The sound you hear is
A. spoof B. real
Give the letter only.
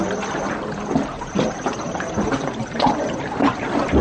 B